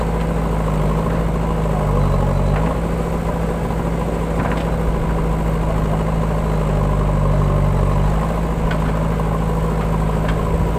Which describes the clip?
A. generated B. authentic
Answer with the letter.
B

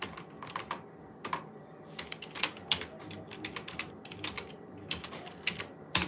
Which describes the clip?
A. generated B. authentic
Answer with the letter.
B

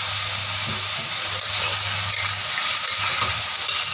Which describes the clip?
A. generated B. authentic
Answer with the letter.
A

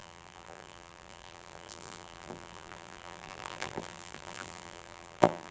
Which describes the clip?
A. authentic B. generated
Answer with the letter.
B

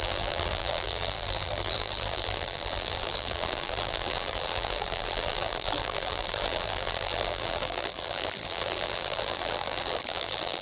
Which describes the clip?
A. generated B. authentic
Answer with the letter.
A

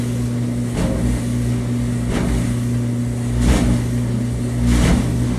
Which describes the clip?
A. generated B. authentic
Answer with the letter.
B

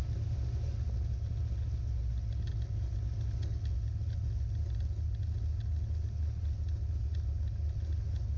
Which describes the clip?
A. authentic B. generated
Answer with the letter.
A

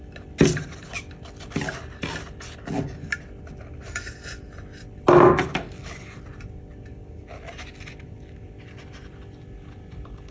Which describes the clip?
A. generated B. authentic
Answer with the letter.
B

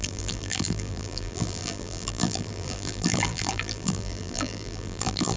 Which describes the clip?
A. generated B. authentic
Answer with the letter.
A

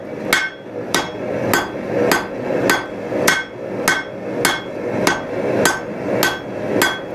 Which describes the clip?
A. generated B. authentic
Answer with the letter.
B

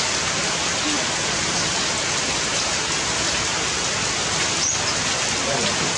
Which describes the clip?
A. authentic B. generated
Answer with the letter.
A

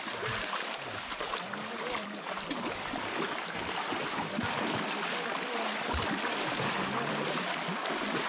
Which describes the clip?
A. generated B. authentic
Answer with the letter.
B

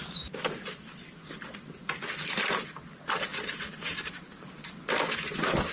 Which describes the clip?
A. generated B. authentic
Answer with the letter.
B